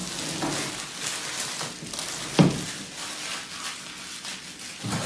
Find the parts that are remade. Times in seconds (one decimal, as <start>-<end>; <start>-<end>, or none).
none